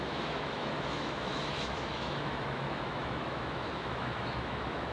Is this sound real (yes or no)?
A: no